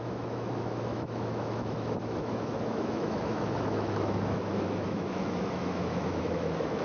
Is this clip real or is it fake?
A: fake